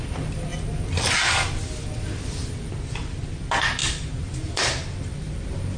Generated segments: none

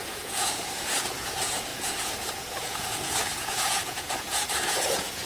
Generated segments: 0.0-5.3 (vocoder, Vocos)